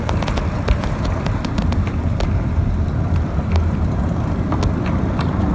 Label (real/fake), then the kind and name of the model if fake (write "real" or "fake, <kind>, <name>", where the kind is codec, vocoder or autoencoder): fake, vocoder, BigVGAN v2